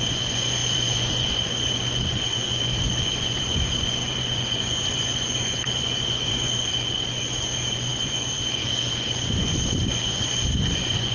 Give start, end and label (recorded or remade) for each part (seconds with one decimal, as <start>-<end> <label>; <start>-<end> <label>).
0.0-11.1 remade